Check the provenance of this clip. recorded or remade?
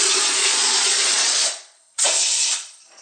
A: remade